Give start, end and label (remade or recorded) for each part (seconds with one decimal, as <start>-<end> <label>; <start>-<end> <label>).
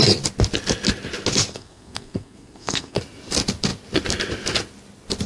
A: 0.0-1.5 recorded; 1.5-3.0 remade; 3.0-5.3 recorded